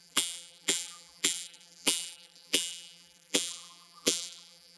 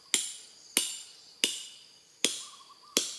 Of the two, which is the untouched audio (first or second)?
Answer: second